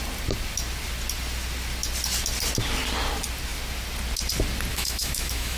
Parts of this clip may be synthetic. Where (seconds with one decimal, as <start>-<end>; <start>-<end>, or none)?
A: 4.7-5.6